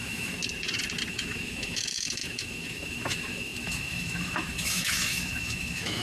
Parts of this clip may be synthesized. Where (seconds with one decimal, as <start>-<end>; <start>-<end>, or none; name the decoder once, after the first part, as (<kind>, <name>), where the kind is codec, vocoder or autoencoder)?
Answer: 0.0-0.4 (autoencoder, DAC-VAE); 1.1-6.0